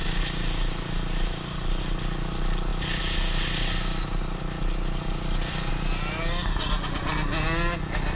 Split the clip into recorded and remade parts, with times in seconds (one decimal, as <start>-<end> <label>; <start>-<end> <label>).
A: 0.0-1.8 remade; 1.8-8.2 recorded